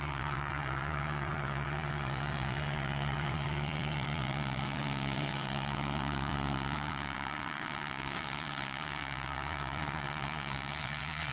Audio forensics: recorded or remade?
remade